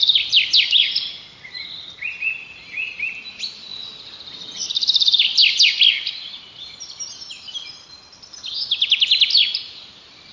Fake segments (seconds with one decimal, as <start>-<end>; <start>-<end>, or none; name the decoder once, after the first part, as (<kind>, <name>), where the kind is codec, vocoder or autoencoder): 0.0-3.7 (vocoder, BigVGAN v2); 4.7-5.3; 9.4-10.3